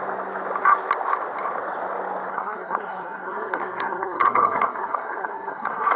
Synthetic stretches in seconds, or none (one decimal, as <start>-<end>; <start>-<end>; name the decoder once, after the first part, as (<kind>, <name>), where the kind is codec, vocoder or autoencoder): 2.3-6.0 (codec, SNAC)